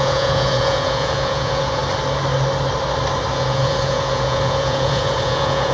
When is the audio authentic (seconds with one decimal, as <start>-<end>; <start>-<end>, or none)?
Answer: 1.8-3.3